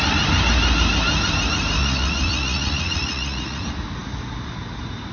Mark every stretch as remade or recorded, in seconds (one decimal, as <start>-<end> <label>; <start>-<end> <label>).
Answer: 0.0-1.8 recorded; 1.8-3.6 remade; 3.6-5.1 recorded